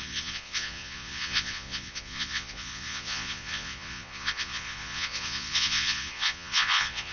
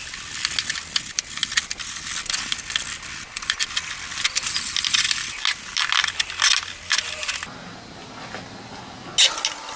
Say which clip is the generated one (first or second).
first